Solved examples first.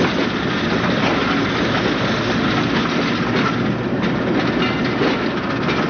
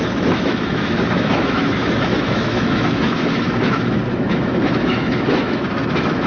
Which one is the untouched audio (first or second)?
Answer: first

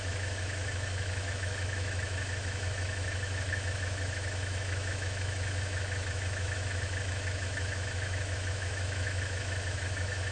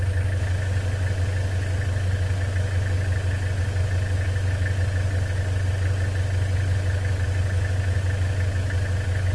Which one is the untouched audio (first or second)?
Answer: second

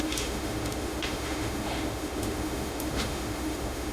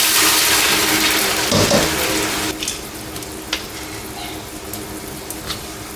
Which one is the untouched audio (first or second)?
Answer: second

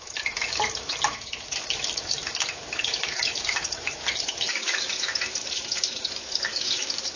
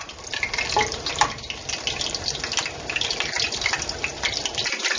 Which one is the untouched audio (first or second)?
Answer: second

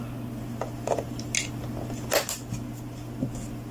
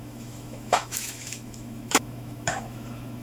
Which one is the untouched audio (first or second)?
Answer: first